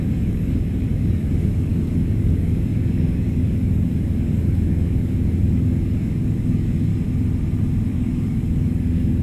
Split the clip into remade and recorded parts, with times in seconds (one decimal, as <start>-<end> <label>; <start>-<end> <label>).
0.0-6.9 remade; 6.9-7.9 recorded; 7.9-9.2 remade